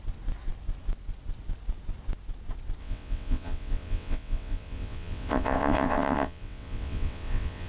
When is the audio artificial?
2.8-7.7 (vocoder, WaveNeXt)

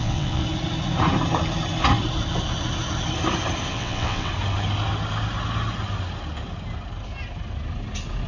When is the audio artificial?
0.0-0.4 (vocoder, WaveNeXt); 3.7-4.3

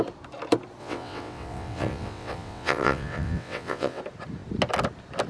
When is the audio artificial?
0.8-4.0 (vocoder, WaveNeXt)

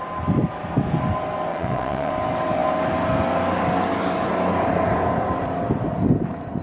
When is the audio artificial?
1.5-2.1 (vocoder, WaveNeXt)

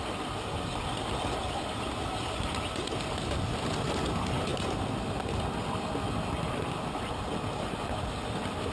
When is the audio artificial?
none

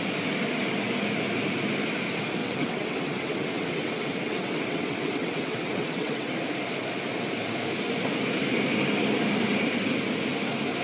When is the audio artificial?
2.4-6.3 (vocoder, WaveNeXt)

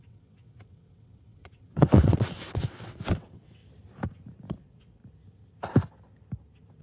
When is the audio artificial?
0.0-3.6 (vocoder, WaveNeXt); 4.5-5.0

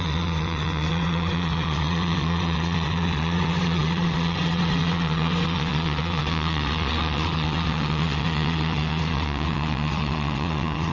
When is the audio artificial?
0.0-10.9 (vocoder, WaveNeXt)